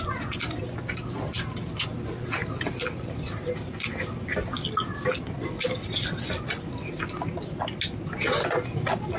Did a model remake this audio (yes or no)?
no